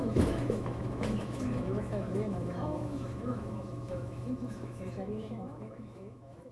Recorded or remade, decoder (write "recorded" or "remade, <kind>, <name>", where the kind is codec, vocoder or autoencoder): remade, autoencoder, DAC-VAE